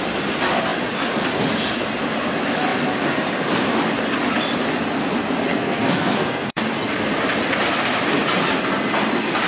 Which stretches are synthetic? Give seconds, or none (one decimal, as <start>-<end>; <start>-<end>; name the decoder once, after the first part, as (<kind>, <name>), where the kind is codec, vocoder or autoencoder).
5.5-6.6 (codec, SNAC)